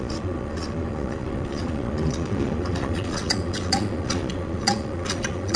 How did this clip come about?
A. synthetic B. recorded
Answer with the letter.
A